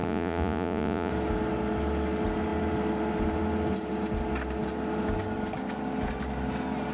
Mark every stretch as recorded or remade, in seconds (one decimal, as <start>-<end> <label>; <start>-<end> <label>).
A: 0.0-1.1 remade; 1.1-6.9 recorded